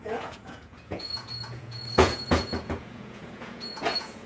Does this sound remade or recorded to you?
remade